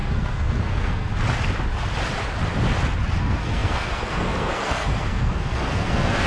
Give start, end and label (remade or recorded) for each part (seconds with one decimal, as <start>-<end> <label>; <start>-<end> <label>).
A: 0.0-1.1 remade; 1.1-3.2 recorded; 3.2-6.3 remade